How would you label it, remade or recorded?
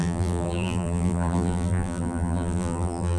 remade